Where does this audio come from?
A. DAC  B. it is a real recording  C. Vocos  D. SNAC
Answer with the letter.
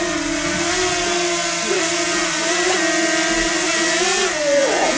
B